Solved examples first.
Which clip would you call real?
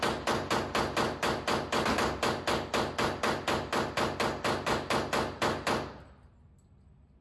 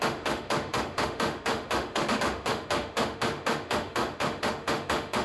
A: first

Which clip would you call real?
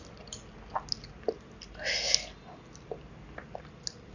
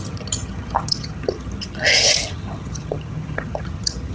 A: first